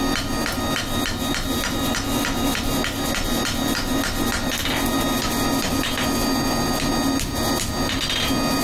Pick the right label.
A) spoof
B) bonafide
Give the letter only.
B